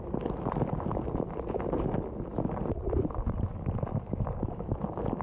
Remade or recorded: recorded